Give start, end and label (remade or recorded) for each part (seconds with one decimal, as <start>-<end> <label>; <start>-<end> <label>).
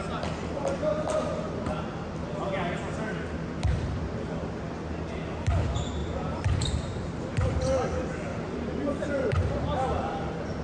0.0-6.0 recorded; 6.0-7.5 remade; 7.5-8.3 recorded; 8.3-10.6 remade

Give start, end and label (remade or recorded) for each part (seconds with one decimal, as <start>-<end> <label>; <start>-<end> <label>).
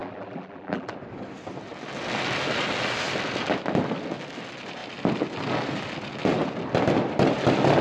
0.0-0.9 remade; 0.9-7.8 recorded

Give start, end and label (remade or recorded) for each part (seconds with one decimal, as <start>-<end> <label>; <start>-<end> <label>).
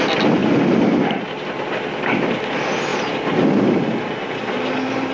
0.0-0.4 recorded; 0.4-0.9 remade; 0.9-5.1 recorded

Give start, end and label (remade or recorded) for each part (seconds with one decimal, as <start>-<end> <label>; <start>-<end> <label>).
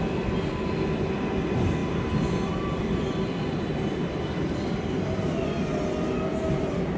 0.0-1.8 recorded; 1.8-2.5 remade; 2.5-7.0 recorded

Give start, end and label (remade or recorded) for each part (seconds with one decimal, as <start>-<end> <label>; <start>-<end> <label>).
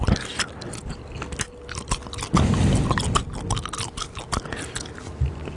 0.0-5.6 recorded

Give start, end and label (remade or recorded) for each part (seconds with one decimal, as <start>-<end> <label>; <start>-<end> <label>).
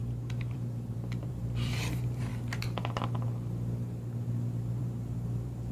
0.0-2.3 remade; 2.3-4.8 recorded; 4.8-5.7 remade